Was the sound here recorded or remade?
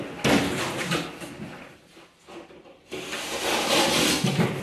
recorded